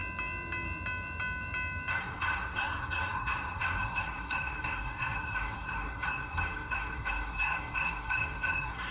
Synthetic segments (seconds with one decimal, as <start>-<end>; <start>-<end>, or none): 1.9-8.9